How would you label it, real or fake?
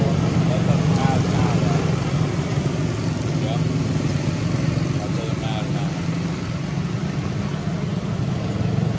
real